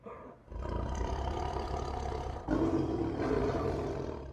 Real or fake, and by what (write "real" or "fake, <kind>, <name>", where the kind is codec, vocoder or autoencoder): real